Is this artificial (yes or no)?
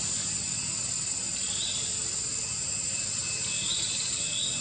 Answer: no